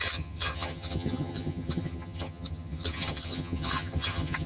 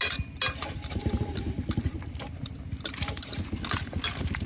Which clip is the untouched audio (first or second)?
second